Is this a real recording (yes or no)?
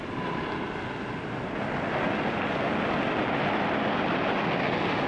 yes